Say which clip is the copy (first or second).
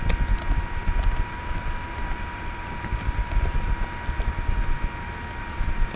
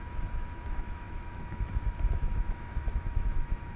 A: second